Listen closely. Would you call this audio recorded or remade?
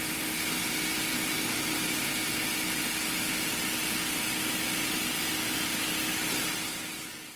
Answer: recorded